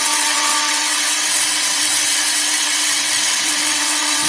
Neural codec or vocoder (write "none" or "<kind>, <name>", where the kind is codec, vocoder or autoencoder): vocoder, WaveNeXt